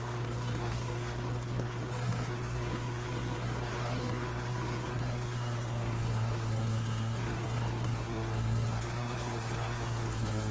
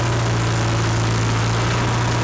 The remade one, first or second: first